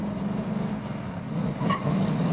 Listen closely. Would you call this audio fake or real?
real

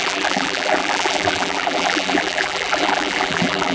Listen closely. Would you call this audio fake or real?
fake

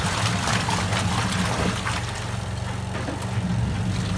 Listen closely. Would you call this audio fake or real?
real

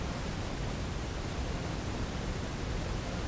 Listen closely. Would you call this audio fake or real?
real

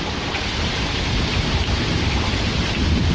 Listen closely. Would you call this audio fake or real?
fake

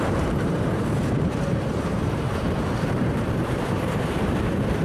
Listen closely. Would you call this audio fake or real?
fake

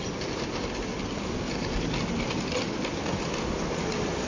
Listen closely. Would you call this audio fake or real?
real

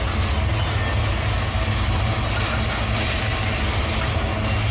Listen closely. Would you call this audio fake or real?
real